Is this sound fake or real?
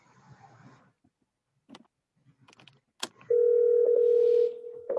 real